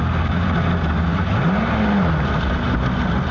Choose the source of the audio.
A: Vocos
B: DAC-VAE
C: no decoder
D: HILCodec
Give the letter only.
C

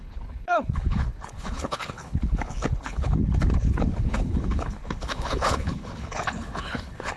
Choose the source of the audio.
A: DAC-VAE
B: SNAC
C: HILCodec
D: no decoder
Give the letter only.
C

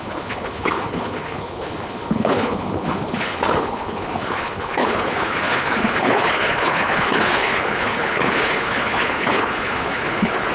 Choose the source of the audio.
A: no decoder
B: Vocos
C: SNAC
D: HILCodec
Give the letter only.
D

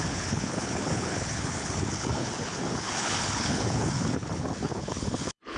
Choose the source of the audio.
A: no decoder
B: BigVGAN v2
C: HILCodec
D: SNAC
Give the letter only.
C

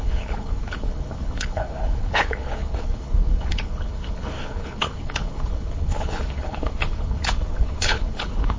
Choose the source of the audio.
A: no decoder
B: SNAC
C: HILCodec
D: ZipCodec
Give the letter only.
C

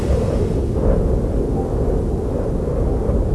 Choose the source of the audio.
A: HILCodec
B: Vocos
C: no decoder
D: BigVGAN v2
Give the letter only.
C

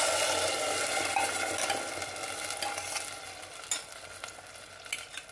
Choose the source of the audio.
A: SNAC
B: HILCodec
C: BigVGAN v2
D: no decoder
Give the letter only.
D